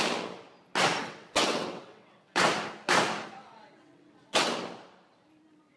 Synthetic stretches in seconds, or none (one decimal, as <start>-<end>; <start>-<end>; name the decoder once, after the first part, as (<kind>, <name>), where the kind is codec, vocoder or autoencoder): 1.0-2.4 (vocoder, WaveNeXt); 3.4-4.5